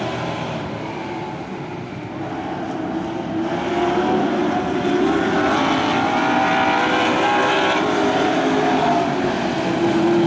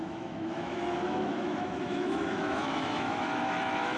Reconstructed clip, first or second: second